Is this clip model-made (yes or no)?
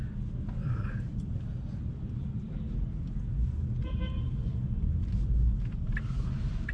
no